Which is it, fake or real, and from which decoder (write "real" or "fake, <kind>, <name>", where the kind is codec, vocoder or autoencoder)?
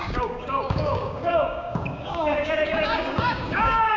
fake, codec, DAC